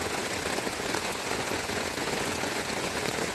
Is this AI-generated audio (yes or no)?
yes